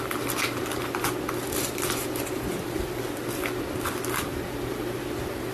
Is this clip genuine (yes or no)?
yes